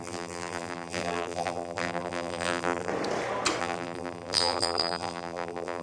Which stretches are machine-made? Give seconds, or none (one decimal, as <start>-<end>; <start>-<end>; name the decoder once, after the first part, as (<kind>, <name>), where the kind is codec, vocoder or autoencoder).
0.0-2.9 (vocoder, BigVGAN v2); 3.6-5.8

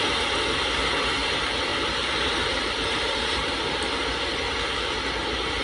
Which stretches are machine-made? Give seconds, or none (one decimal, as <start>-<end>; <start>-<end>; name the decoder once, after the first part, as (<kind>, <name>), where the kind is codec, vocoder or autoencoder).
1.7-3.6 (vocoder, BigVGAN v2)

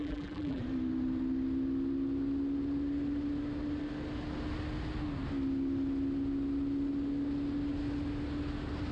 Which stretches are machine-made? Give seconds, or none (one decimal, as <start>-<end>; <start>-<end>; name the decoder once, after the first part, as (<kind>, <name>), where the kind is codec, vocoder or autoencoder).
0.0-0.6 (vocoder, BigVGAN v2)

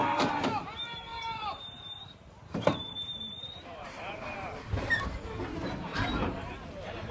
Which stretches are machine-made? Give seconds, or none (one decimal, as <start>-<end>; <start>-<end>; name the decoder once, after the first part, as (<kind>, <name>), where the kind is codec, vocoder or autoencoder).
1.1-5.4 (vocoder, BigVGAN v2); 5.9-6.6

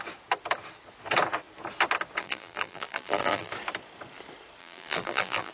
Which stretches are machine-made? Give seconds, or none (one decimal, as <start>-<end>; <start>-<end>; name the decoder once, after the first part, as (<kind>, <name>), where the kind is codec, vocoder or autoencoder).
2.2-3.5 (vocoder, BigVGAN v2); 4.6-5.5

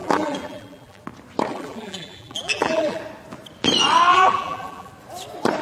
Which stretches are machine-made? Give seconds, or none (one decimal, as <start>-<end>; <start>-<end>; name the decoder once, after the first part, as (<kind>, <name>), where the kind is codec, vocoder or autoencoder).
0.0-1.0 (vocoder, BigVGAN v2); 1.5-3.0; 4.1-4.9

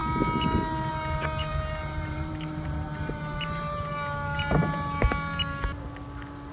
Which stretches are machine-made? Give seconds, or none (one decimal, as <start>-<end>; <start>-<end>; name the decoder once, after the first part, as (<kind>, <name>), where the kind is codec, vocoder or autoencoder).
1.5-3.9 (vocoder, BigVGAN v2)